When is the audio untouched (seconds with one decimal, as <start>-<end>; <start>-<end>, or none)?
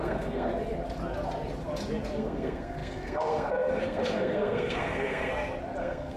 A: 0.5-2.2; 5.3-5.8